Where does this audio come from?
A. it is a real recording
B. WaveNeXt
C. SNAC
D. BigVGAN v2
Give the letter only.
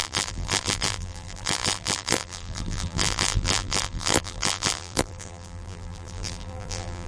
D